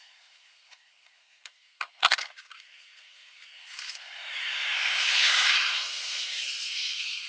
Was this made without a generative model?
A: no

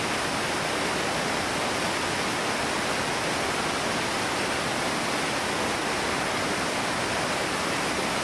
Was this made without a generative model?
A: yes